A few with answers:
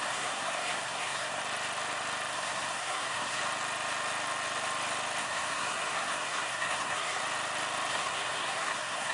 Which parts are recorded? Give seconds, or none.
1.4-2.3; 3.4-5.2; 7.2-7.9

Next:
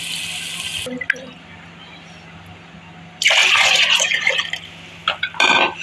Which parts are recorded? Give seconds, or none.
0.0-3.4; 4.3-5.8

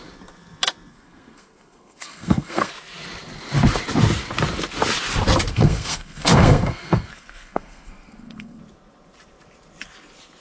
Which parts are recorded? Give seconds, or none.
0.0-0.9; 2.7-5.5; 8.6-10.4

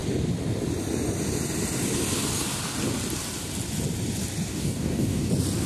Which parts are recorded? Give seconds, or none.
0.0-4.5; 5.3-5.7

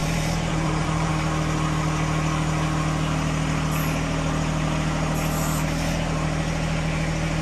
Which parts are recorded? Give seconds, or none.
1.1-7.4

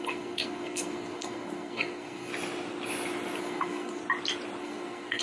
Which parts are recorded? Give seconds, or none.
2.3-3.4; 4.0-4.6